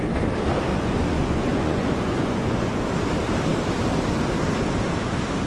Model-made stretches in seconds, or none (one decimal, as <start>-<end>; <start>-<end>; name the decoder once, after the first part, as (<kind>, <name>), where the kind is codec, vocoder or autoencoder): 0.7-2.7 (vocoder, Vocos)